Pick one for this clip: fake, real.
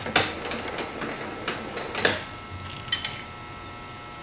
real